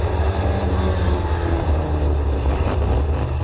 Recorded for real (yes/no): yes